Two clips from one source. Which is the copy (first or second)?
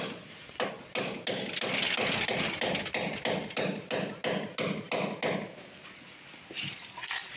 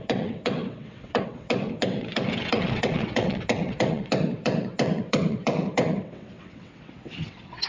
second